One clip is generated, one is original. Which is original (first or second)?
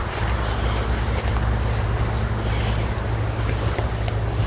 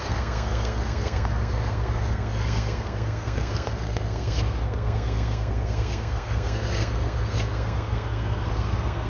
first